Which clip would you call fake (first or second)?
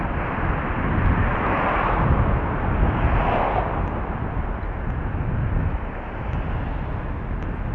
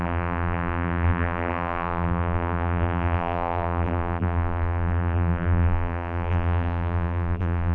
second